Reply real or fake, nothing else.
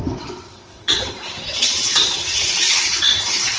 fake